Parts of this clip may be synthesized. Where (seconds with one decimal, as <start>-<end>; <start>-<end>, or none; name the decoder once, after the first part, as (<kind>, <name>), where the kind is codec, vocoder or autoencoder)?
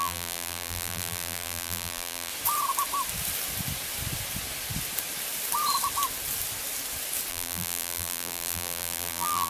0.0-2.3 (vocoder, BigVGAN v2); 7.3-9.5